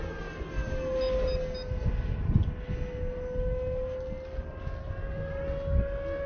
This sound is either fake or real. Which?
real